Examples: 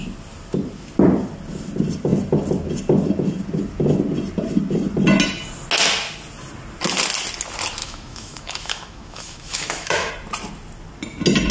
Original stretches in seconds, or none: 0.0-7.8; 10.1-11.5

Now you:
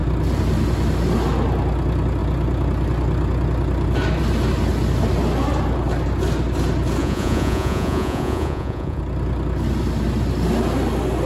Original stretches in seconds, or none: 0.0-7.0; 9.0-11.3

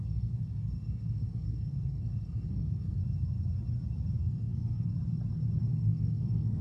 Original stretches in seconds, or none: 3.0-4.2; 4.9-5.7

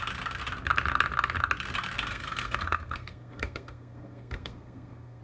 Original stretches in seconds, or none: 0.0-2.1

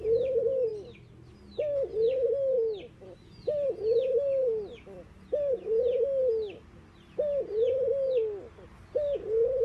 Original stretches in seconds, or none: 0.0-9.6

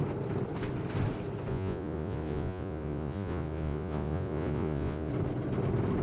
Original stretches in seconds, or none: 0.0-1.5; 5.1-6.0

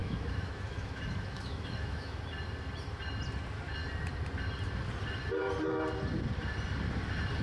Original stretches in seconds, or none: 2.2-7.4